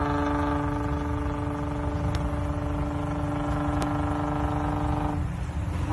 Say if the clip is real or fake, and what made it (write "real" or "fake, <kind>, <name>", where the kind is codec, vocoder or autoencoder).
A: real